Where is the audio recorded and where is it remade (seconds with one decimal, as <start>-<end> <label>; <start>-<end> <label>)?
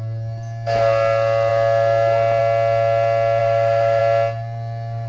0.0-3.4 recorded; 3.4-4.0 remade; 4.0-5.1 recorded